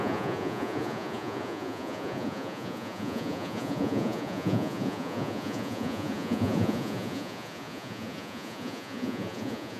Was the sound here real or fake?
fake